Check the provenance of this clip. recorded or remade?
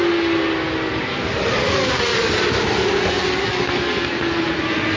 recorded